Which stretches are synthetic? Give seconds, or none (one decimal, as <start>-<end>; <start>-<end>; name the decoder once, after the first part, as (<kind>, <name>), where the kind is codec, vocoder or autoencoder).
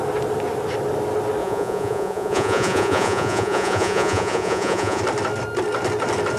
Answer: 1.4-5.0 (vocoder, Vocos)